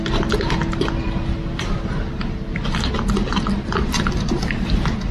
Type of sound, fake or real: real